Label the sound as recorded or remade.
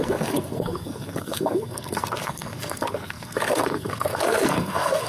remade